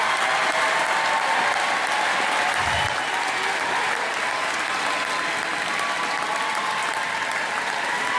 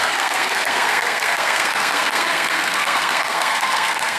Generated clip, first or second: second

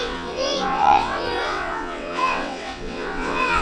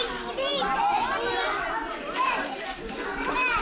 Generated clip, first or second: first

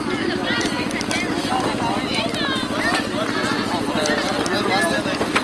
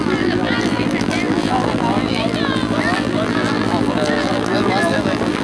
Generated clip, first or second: second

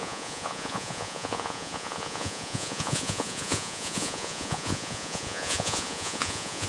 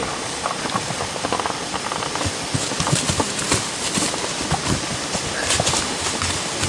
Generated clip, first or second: first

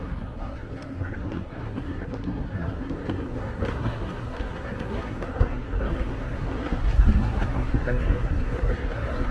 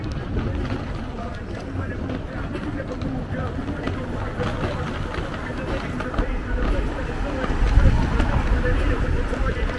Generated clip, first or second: first